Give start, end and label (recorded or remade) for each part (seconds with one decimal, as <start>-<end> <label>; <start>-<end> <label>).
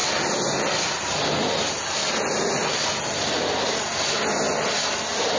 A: 0.0-5.4 recorded